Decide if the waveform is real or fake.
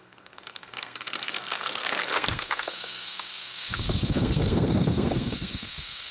fake